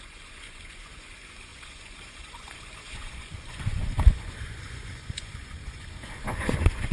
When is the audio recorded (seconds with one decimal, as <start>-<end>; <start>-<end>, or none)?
none